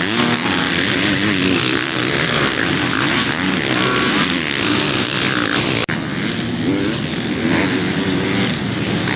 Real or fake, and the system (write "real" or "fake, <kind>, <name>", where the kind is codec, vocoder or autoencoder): real